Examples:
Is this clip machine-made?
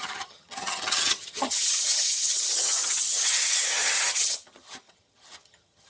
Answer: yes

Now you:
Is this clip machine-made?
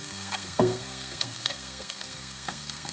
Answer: yes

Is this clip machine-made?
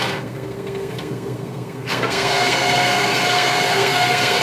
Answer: yes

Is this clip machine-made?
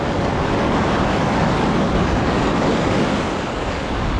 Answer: yes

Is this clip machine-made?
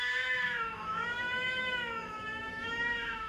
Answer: yes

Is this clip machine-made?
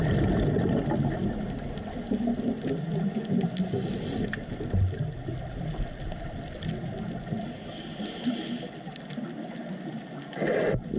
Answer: no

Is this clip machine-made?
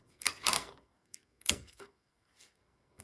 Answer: yes